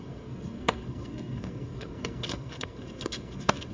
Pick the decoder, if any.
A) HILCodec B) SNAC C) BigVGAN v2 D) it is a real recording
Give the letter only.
B